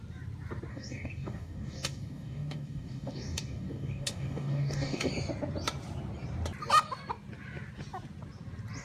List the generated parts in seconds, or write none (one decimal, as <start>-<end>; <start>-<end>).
0.7-5.1